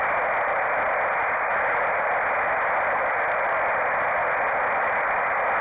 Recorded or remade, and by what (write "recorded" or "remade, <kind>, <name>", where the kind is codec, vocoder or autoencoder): recorded